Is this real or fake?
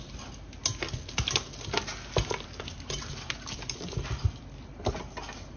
real